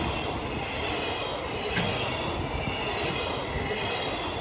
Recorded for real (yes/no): yes